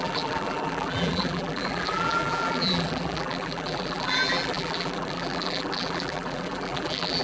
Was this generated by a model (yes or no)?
yes